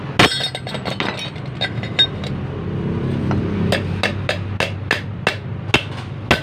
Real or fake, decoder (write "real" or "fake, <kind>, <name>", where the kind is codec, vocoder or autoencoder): real